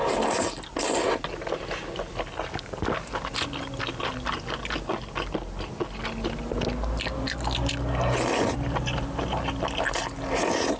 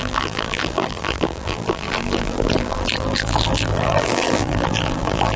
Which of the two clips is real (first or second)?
first